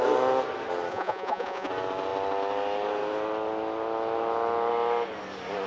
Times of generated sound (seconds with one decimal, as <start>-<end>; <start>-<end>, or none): 0.9-1.7